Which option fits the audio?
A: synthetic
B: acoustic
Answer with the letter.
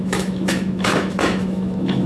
A